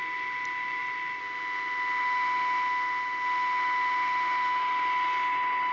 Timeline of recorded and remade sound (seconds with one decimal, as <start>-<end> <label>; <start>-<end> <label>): 0.0-1.2 recorded; 1.2-4.6 remade; 4.6-5.7 recorded